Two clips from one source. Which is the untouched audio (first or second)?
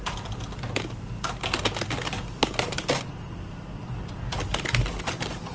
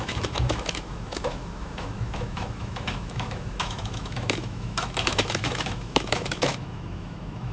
first